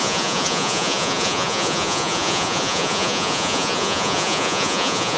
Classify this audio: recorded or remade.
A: remade